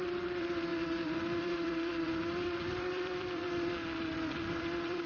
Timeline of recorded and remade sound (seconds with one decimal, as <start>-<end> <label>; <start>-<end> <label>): 0.0-5.1 remade